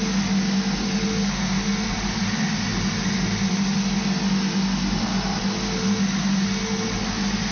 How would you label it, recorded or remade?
recorded